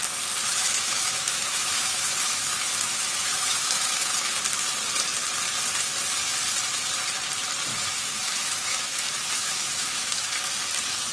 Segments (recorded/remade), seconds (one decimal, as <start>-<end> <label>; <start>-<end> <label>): 0.0-0.5 recorded; 0.5-4.3 remade; 4.3-7.7 recorded; 7.7-10.3 remade; 10.3-11.1 recorded